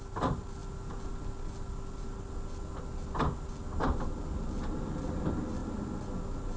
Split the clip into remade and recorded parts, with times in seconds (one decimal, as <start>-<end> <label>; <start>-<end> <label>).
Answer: 0.0-6.6 recorded